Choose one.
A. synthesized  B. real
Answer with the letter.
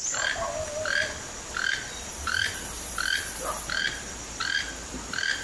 A